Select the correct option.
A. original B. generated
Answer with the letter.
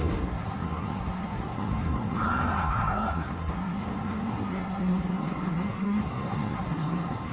B